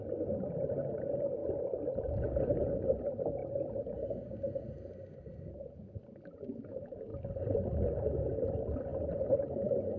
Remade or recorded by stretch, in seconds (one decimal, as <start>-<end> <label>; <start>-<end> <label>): 0.0-10.0 recorded